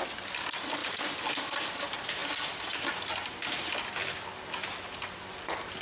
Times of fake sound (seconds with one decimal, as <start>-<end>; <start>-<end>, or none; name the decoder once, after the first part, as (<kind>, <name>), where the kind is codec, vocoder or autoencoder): 0.8-1.3 (vocoder, BigVGAN v2)